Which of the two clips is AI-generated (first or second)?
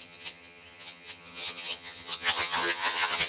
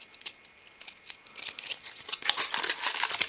first